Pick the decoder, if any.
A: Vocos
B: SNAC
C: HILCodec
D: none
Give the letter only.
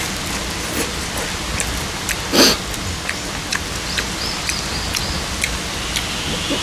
D